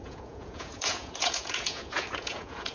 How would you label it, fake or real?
fake